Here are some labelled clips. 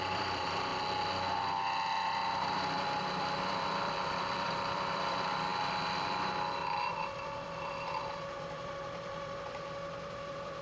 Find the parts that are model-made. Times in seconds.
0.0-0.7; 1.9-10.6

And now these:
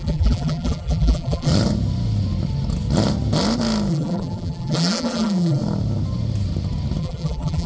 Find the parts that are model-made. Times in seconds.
0.0-1.5; 3.9-5.6; 7.0-7.7

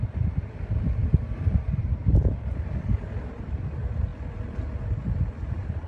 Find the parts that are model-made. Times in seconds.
0.0-4.1; 5.3-5.9

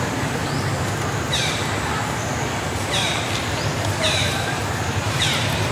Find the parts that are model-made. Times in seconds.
0.0-0.4; 3.8-5.7

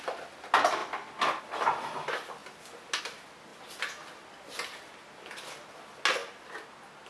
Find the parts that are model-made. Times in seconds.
none

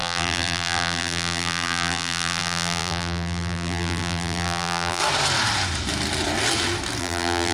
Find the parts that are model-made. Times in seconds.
0.0-5.0; 7.0-7.5